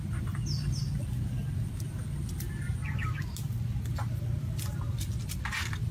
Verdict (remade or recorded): recorded